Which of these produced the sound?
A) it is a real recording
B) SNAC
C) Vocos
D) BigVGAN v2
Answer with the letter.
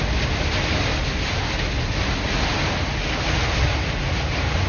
A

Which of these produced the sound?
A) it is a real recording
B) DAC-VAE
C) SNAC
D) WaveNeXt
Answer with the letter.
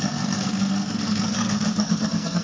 C